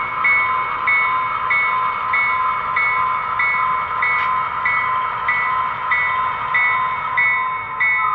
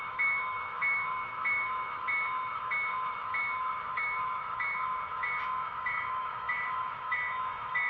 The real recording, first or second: first